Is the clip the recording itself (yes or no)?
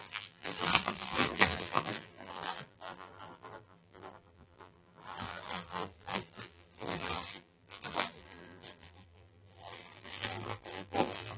no